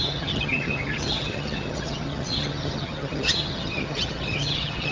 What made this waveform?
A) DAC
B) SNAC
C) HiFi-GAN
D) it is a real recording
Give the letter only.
C